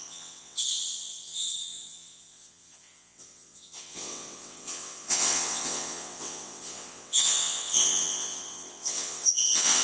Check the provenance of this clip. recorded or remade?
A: remade